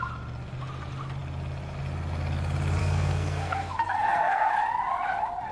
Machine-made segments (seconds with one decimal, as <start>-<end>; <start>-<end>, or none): 2.8-4.5